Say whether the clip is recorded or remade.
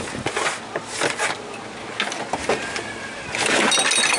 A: recorded